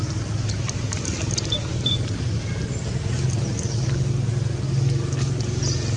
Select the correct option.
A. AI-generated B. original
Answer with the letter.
B